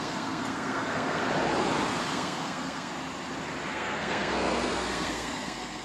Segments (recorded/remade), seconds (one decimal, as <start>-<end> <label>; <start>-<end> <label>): 0.0-1.2 remade; 1.2-1.9 recorded; 1.9-2.9 remade; 2.9-3.7 recorded; 3.7-5.8 remade

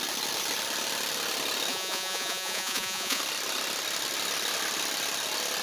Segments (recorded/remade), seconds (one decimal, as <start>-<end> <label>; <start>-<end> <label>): 0.0-1.7 recorded; 1.7-3.2 remade; 3.2-5.6 recorded

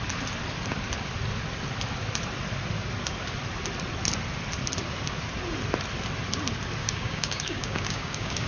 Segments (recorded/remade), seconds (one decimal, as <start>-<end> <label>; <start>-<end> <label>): 0.0-6.8 recorded; 6.8-8.5 remade

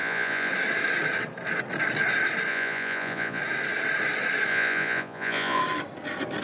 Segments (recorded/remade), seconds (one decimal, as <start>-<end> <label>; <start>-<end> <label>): 0.0-0.5 remade; 0.5-2.5 recorded; 2.5-3.4 remade; 3.4-4.5 recorded; 4.5-5.6 remade; 5.6-6.4 recorded

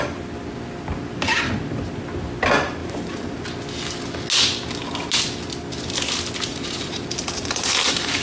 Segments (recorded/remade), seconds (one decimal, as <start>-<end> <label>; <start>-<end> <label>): 0.0-2.8 recorded; 2.8-3.4 remade; 3.4-6.5 recorded; 6.5-8.2 remade

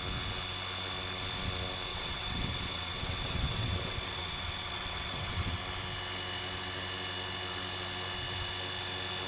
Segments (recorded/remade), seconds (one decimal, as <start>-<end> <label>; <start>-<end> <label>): 0.0-1.9 recorded; 1.9-5.6 remade; 5.6-9.3 recorded